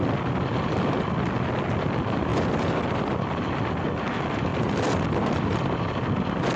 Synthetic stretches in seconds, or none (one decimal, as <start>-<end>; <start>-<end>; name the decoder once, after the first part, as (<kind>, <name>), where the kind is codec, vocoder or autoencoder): 2.3-3.4 (vocoder, BigVGAN v2); 4.5-5.2